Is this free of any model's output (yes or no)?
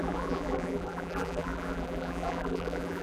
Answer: no